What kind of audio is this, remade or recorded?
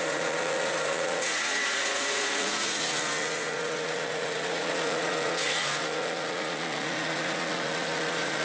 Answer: remade